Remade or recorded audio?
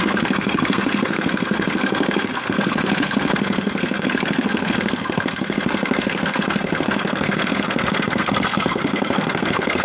remade